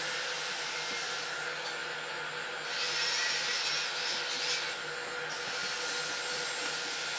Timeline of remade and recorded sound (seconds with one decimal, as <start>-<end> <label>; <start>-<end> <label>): 0.0-7.2 recorded